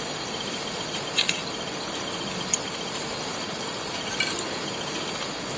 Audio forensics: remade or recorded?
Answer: recorded